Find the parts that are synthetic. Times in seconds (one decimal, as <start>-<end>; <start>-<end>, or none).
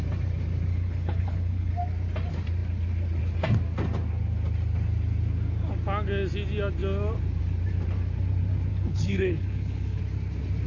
0.7-1.7; 8.7-10.0